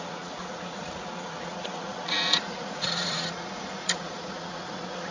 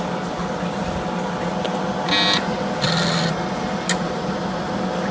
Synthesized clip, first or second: first